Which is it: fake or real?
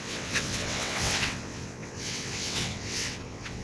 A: fake